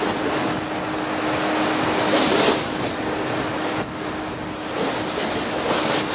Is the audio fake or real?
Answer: real